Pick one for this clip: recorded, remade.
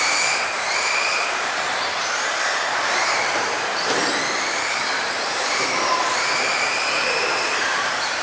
remade